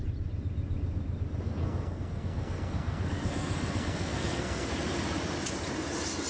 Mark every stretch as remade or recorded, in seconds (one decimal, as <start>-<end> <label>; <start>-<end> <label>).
0.0-1.6 recorded; 1.6-4.7 remade; 4.7-6.3 recorded